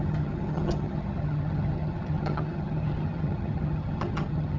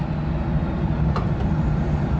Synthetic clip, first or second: first